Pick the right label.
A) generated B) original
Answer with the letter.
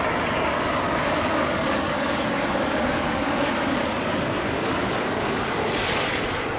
A